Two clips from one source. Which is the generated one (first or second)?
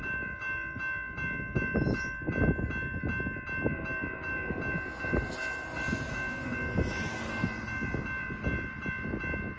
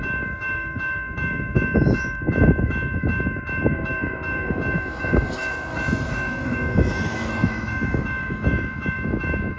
second